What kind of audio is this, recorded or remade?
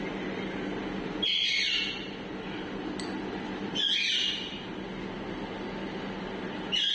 recorded